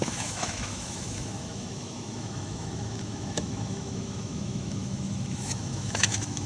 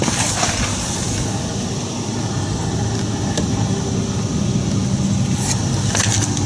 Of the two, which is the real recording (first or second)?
second